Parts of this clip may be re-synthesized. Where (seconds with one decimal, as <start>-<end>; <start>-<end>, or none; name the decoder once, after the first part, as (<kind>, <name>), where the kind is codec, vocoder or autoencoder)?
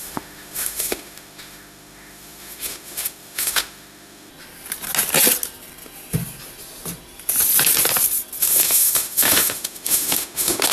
0.0-4.3 (autoencoder, DAC-VAE); 8.4-10.7